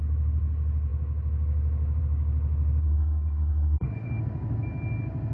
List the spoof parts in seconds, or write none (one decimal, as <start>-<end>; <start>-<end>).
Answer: 2.8-4.1